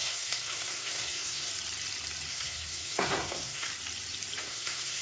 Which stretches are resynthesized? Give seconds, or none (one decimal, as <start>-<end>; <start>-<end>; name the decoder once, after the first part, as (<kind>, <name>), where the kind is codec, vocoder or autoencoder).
0.0-1.5 (codec, SNAC); 2.3-3.7; 4.4-5.0